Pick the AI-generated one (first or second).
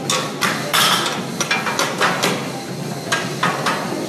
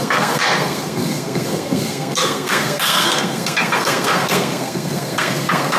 second